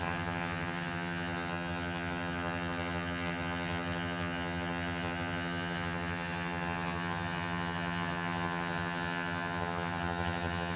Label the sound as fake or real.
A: fake